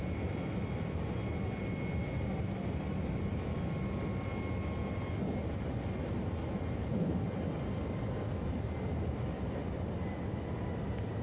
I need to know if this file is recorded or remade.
recorded